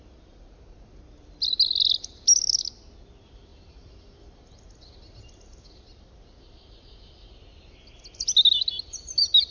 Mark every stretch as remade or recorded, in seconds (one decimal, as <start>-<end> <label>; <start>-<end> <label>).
0.0-9.5 recorded